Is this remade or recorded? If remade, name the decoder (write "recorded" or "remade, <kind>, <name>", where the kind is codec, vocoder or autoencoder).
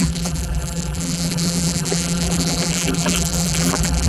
remade, vocoder, BigVGAN v2